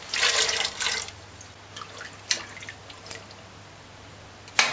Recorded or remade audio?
recorded